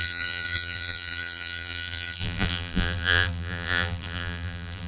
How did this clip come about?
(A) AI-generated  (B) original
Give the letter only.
A